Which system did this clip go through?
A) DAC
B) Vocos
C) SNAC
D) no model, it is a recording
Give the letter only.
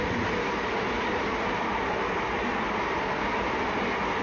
D